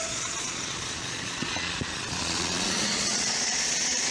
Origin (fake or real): fake